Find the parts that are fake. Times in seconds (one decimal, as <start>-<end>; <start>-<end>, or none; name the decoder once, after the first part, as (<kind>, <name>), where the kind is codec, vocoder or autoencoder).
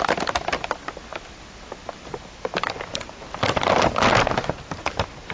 0.0-5.3 (vocoder, BigVGAN v2)